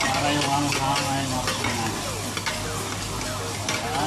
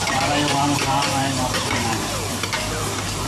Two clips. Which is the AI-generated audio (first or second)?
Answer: second